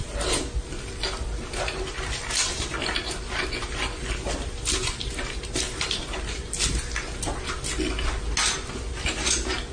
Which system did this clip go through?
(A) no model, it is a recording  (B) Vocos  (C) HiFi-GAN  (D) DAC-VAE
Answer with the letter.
A